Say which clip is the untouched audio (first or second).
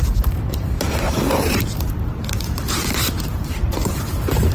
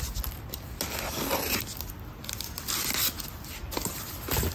second